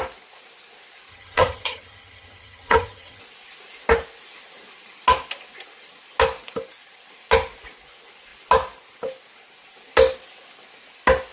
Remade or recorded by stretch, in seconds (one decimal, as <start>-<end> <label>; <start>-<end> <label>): 0.0-1.1 recorded; 1.1-3.2 remade; 3.2-11.3 recorded